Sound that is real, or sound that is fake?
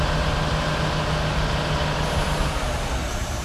real